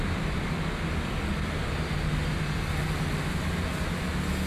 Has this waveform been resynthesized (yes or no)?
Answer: no